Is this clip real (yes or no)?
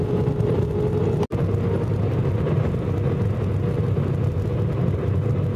yes